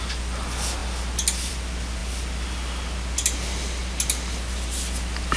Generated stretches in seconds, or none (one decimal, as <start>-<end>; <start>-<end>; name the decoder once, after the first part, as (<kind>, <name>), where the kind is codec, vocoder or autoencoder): none